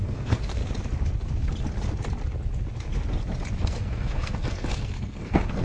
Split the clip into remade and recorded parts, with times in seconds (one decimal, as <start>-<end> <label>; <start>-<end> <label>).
0.0-0.6 remade; 0.6-3.6 recorded; 3.6-5.6 remade